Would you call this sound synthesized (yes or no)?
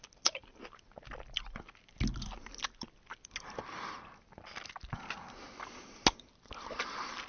no